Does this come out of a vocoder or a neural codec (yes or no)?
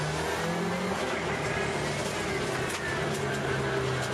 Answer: no